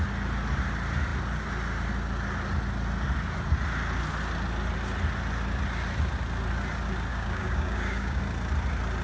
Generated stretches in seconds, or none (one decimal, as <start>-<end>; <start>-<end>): 7.1-8.2